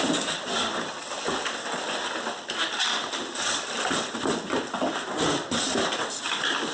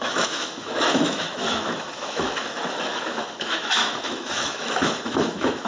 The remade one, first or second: second